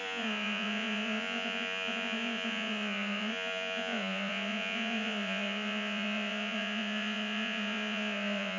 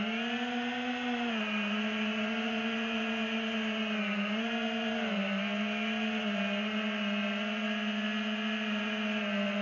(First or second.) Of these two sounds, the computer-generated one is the first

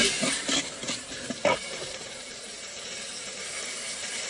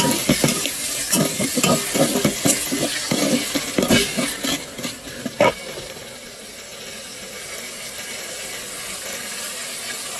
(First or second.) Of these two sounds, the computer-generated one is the first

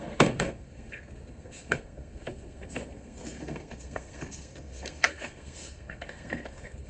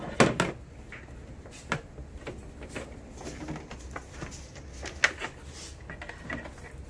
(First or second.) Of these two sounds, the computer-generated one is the first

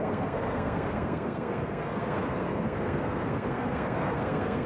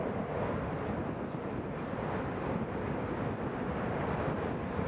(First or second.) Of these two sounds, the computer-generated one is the first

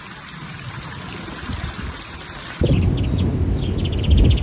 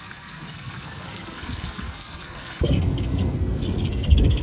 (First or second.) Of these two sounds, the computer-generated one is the second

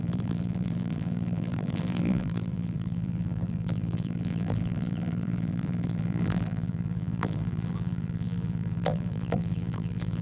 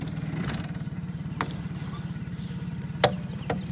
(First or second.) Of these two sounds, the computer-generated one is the first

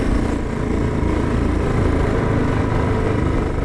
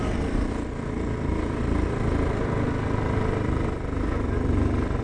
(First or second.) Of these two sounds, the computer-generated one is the first